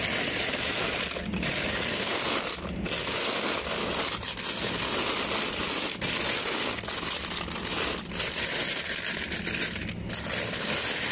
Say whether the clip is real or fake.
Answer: real